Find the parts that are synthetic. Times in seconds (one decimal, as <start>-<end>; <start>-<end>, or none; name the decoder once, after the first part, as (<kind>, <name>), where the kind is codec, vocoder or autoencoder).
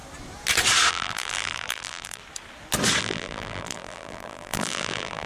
0.9-2.2 (vocoder, BigVGAN v2); 3.0-5.3